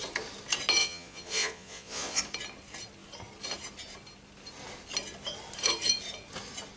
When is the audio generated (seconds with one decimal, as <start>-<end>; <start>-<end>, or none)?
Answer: 0.8-2.2